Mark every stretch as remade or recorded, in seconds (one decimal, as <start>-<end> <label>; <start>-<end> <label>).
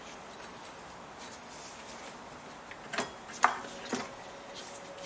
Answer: 0.0-5.1 recorded